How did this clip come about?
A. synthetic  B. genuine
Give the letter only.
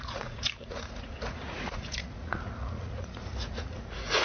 A